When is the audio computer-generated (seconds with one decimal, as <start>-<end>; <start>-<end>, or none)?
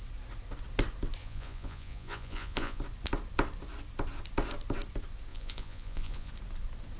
1.2-2.8; 5.3-6.3